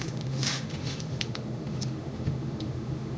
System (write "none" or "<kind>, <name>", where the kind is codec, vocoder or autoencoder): autoencoder, DAC-VAE